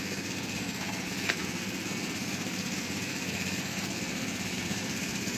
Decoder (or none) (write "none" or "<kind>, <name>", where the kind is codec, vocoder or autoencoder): codec, SNAC